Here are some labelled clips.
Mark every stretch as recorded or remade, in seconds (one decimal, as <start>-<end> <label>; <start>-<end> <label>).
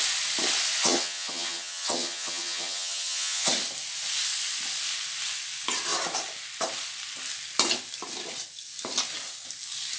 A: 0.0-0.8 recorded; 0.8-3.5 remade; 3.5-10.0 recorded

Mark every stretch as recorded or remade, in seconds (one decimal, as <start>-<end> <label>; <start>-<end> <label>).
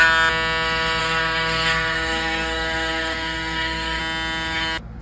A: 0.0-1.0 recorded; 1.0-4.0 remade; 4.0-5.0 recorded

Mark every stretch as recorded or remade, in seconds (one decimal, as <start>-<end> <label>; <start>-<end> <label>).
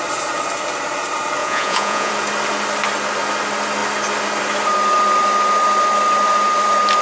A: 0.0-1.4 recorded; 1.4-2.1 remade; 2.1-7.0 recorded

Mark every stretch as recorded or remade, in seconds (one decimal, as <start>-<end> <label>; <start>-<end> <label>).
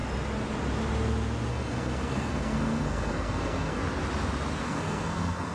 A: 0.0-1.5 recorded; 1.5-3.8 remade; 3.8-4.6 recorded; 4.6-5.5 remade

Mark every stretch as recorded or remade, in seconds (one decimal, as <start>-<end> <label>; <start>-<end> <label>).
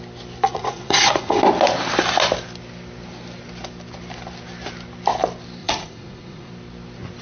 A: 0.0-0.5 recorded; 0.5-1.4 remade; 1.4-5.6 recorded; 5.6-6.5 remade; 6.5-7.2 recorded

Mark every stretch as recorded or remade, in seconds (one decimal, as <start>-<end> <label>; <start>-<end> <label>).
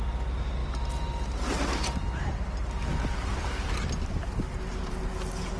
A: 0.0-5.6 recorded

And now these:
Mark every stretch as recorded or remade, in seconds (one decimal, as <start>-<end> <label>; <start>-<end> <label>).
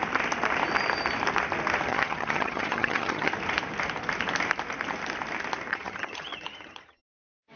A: 0.0-1.9 recorded; 1.9-3.3 remade; 3.3-5.7 recorded; 5.7-7.0 remade; 7.0-7.6 recorded